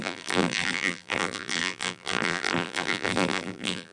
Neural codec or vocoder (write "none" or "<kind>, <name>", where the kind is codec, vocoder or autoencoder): vocoder, BigVGAN v2